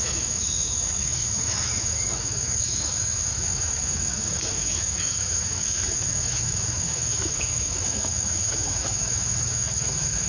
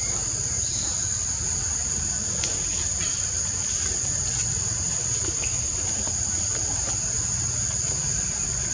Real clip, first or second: second